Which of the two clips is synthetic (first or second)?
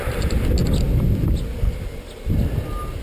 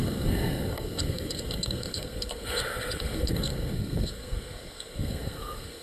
second